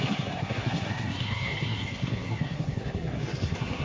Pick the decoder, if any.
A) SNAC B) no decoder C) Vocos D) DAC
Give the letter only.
A